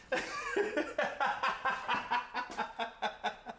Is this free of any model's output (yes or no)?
yes